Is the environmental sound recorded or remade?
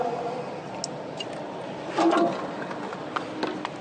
recorded